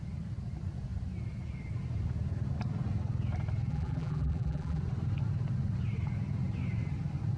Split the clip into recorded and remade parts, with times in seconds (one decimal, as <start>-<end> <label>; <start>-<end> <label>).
0.0-3.7 recorded; 3.7-4.8 remade; 4.8-7.4 recorded